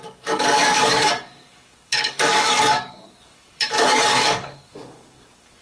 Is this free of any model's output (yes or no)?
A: no